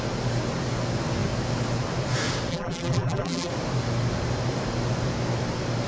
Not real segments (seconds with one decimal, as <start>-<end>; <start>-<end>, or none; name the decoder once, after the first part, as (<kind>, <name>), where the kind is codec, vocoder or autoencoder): 2.5-3.5 (vocoder, BigVGAN v2)